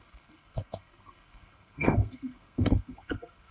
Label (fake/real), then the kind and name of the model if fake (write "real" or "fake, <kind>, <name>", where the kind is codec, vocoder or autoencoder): fake, codec, SNAC